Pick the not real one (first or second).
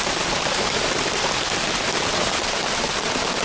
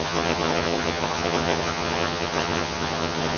second